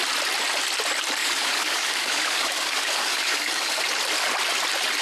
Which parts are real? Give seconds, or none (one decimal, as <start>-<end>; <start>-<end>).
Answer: 0.0-1.2; 3.8-5.0